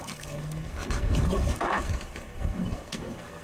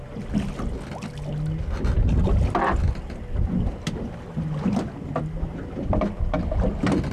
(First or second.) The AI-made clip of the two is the first